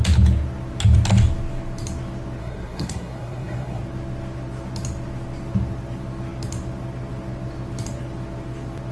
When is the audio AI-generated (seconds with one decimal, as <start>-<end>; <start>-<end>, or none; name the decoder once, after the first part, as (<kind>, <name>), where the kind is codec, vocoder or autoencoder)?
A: 2.4-3.8 (codec, SNAC)